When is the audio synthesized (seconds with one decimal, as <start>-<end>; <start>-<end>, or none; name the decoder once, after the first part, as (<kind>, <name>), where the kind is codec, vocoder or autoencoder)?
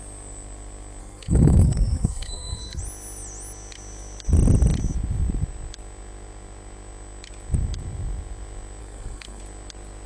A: 1.0-2.8 (codec, SNAC); 8.8-9.4